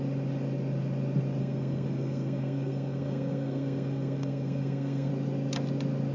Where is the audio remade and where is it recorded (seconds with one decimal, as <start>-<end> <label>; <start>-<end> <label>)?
0.0-1.4 recorded; 1.4-5.1 remade; 5.1-6.1 recorded

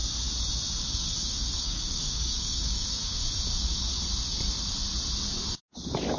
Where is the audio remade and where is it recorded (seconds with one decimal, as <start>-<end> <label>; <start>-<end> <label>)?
0.0-0.9 recorded; 0.9-3.2 remade; 3.2-6.2 recorded

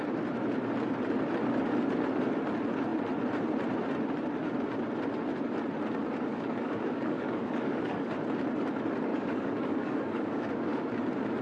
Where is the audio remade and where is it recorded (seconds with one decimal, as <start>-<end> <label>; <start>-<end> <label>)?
0.0-6.3 recorded; 6.3-8.1 remade; 8.1-9.1 recorded; 9.1-10.9 remade; 10.9-11.4 recorded

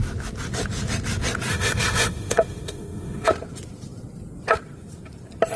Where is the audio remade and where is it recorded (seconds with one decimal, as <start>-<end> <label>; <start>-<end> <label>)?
0.0-1.5 recorded; 1.5-3.3 remade; 3.3-5.6 recorded

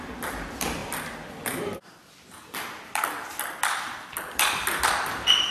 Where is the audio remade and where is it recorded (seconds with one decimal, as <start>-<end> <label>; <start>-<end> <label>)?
0.0-5.5 remade

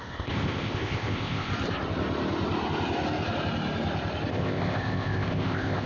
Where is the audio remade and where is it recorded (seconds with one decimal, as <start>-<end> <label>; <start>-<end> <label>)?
0.0-1.5 remade; 1.5-4.3 recorded; 4.3-5.9 remade